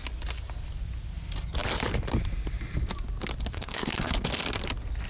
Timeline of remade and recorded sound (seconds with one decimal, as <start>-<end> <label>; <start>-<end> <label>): 0.0-3.5 recorded; 3.5-4.1 remade; 4.1-5.1 recorded

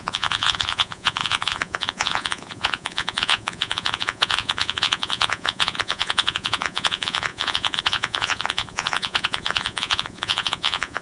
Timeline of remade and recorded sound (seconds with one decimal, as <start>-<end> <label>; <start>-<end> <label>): 0.0-11.0 remade

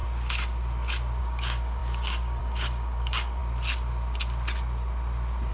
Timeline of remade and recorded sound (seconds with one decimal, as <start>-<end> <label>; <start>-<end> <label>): 0.0-1.2 recorded; 1.2-3.4 remade; 3.4-5.5 recorded

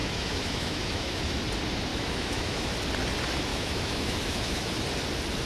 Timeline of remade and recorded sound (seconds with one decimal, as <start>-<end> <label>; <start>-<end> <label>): 0.0-1.4 remade; 1.4-1.9 recorded; 1.9-2.7 remade; 2.7-3.5 recorded; 3.5-4.8 remade; 4.8-5.5 recorded

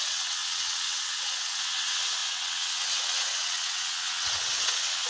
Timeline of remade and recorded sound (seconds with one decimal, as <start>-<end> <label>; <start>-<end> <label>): 0.0-5.1 remade

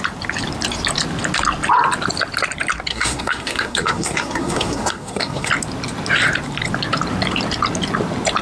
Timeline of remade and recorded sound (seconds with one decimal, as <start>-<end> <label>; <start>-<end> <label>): 0.0-2.9 recorded; 2.9-5.5 remade; 5.5-8.4 recorded

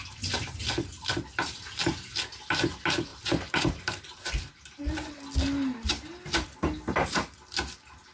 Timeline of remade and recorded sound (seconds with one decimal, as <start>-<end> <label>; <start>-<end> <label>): 0.0-3.1 recorded; 3.1-5.1 remade; 5.1-8.1 recorded

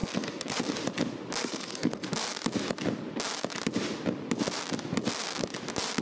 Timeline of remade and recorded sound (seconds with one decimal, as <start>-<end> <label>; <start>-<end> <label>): 0.0-0.6 remade; 0.6-1.4 recorded; 1.4-2.1 remade; 2.1-6.0 recorded